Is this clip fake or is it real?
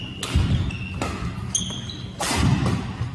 real